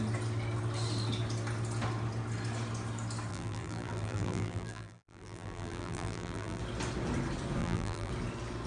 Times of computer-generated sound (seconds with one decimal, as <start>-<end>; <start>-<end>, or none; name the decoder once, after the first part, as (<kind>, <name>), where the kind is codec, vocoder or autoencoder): 3.3-6.6 (vocoder, BigVGAN v2); 7.6-8.1